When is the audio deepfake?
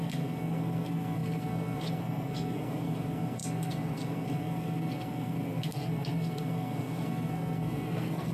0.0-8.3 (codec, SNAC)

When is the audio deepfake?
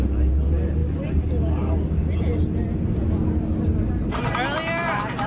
none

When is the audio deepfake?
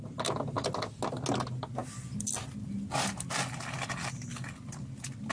1.8-5.3 (vocoder, BigVGAN v2)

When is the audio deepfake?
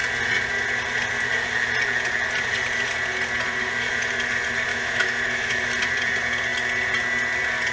4.7-5.7 (autoencoder, DAC-VAE)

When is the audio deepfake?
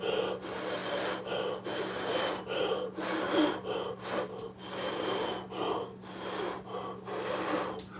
none